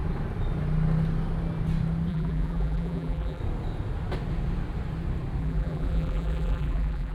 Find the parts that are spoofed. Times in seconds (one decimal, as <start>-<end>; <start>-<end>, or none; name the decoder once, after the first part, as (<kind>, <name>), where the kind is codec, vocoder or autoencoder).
2.1-3.4 (vocoder, BigVGAN v2); 5.4-7.1